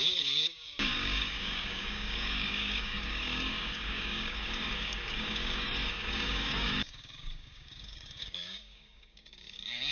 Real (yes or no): no